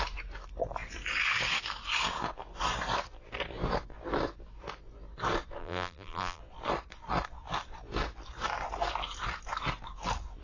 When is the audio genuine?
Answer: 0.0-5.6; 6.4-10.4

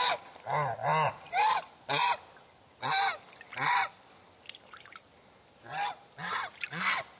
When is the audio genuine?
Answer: 0.0-7.2

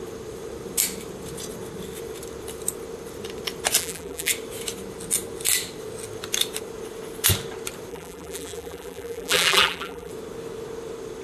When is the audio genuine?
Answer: 0.0-3.8; 4.3-7.9; 10.1-11.2

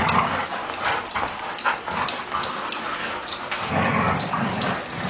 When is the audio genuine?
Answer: 0.0-5.1

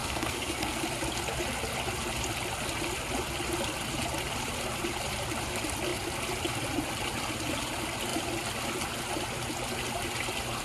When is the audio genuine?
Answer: 0.8-10.6

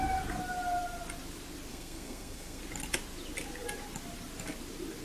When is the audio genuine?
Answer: 0.0-1.7; 2.6-5.0

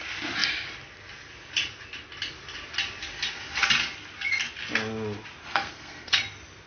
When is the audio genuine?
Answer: 0.0-5.4; 6.2-6.7

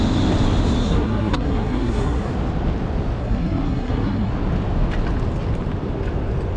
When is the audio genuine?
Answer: 0.0-0.8; 2.3-3.2; 4.3-6.6